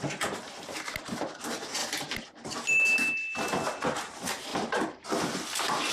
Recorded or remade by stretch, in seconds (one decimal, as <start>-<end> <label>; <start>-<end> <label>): 0.0-1.8 recorded; 1.8-2.8 remade; 2.8-4.5 recorded; 4.5-5.9 remade